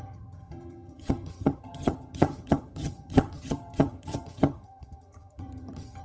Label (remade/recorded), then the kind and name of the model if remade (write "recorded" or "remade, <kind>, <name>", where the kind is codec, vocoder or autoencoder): remade, vocoder, HiFi-GAN